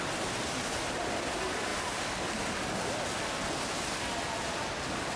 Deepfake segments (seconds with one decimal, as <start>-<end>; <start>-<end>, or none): none